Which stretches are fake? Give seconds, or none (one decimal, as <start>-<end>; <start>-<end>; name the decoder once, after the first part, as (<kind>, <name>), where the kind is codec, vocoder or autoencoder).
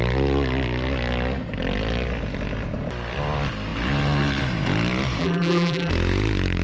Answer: 5.2-5.9 (vocoder, BigVGAN v2)